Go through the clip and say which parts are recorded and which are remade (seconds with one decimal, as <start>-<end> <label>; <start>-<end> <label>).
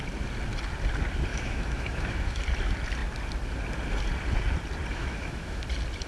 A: 0.0-1.3 recorded; 1.3-2.4 remade; 2.4-4.9 recorded; 4.9-5.6 remade; 5.6-6.1 recorded